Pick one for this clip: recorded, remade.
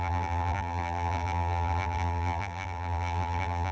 remade